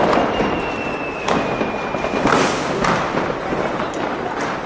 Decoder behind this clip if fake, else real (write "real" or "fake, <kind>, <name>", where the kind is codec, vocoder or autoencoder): real